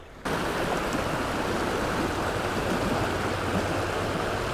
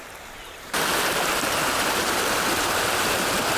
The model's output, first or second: second